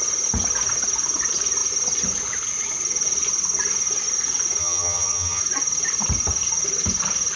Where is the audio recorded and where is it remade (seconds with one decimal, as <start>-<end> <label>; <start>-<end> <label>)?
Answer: 0.0-4.6 recorded; 4.6-5.4 remade; 5.4-7.4 recorded